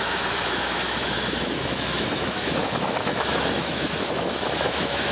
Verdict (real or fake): fake